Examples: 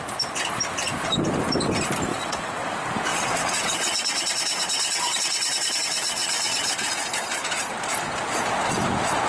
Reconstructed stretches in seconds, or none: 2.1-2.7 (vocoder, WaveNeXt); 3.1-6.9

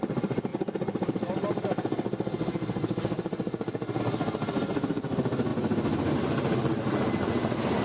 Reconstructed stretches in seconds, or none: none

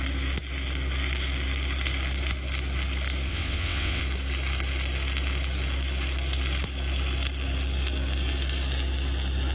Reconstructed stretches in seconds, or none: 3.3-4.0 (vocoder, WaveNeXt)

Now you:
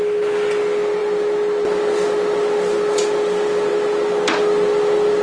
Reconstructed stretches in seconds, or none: none

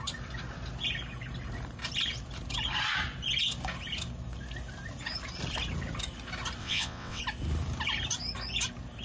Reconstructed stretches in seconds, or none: 6.6-7.2 (vocoder, WaveNeXt)

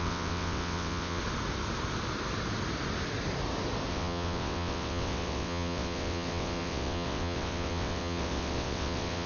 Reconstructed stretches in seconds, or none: 0.0-1.2 (vocoder, WaveNeXt); 3.9-9.3

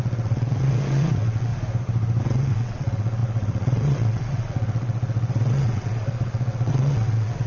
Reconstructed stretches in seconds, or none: 0.0-1.5 (vocoder, WaveNeXt); 2.2-7.5